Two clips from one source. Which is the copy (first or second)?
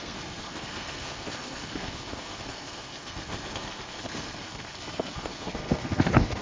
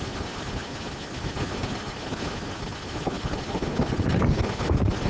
first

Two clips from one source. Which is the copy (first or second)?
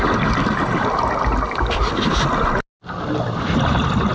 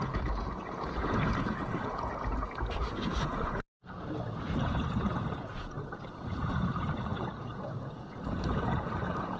second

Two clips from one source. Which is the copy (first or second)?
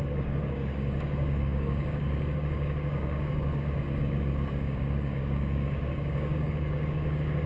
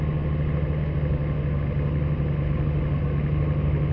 first